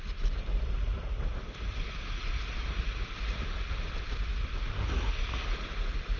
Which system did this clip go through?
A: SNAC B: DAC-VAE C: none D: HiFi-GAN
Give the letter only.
C